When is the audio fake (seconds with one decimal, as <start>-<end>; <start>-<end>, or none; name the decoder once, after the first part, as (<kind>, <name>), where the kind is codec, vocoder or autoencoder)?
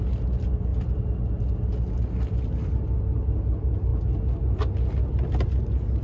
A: none